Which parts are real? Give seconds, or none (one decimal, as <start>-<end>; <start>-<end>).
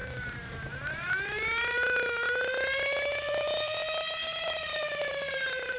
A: 0.0-3.2; 3.8-4.4